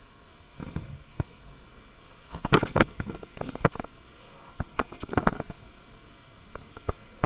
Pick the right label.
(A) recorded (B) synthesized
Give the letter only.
B